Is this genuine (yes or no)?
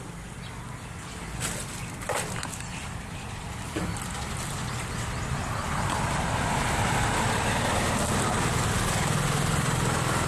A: yes